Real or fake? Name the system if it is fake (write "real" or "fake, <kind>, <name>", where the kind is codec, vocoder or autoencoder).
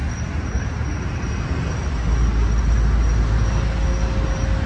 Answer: real